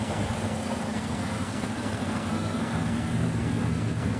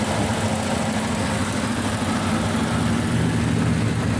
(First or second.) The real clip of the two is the second